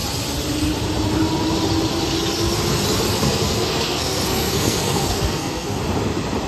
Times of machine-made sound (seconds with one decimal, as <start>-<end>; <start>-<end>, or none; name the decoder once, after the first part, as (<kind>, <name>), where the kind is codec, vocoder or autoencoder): 3.1-5.8 (codec, SNAC)